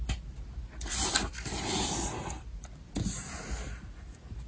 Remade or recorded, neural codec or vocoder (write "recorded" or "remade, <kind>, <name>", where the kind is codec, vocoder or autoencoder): recorded